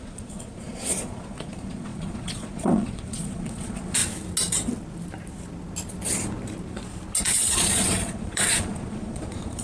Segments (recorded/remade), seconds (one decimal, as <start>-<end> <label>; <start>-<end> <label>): 0.0-4.0 remade; 4.0-7.2 recorded; 7.2-9.6 remade